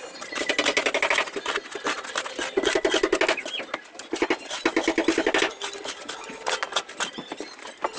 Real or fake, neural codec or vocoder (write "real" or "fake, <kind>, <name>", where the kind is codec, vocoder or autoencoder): real